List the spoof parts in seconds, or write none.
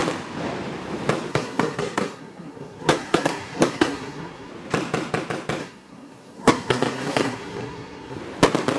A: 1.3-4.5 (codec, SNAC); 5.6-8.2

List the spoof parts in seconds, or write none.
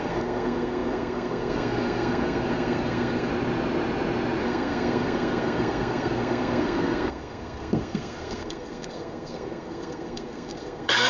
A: 0.0-3.3 (codec, SNAC); 4.4-11.1